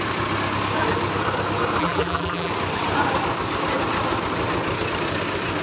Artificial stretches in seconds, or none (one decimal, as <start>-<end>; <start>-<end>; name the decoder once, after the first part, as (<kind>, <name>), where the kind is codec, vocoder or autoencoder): 1.8-2.5 (vocoder, BigVGAN v2)